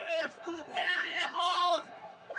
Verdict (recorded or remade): remade